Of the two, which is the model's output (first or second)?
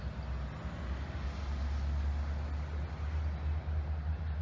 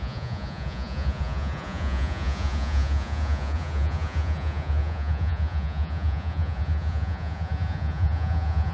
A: second